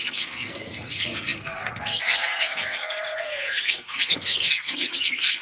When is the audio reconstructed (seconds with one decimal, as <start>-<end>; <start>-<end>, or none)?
0.0-5.4